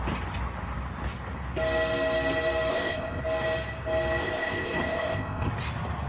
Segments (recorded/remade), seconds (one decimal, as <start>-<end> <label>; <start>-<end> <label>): 0.0-2.7 recorded; 2.7-3.2 remade; 3.2-4.2 recorded; 4.2-5.5 remade; 5.5-6.1 recorded